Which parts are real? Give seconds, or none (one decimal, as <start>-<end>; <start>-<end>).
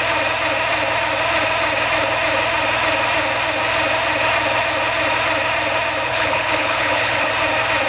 0.0-6.1; 7.3-7.9